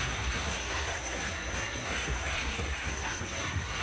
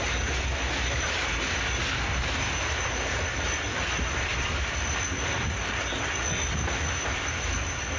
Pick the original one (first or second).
second